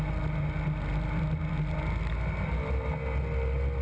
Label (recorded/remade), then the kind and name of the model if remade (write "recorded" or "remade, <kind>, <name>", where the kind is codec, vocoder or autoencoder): recorded